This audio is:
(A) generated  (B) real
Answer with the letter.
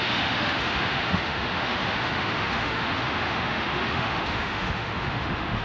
A